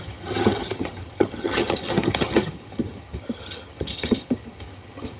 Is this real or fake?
fake